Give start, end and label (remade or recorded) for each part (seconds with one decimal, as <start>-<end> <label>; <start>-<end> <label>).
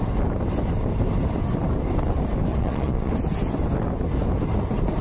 0.0-2.5 recorded; 2.5-3.1 remade; 3.1-5.0 recorded